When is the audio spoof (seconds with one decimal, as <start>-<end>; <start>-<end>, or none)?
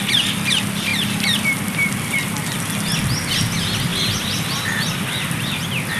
0.9-2.6; 3.9-4.6